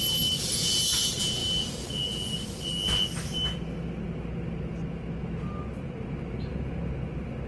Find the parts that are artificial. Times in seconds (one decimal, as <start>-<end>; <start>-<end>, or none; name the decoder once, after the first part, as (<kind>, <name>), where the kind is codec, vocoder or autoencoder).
none